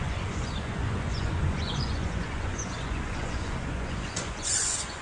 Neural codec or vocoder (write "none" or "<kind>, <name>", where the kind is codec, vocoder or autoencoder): vocoder, Vocos